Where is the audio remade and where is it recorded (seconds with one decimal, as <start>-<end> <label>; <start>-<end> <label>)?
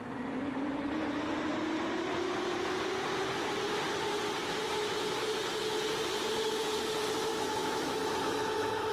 0.0-7.3 recorded; 7.3-8.9 remade